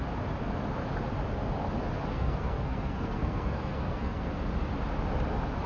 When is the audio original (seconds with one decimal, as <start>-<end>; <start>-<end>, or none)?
0.0-2.1; 4.3-5.7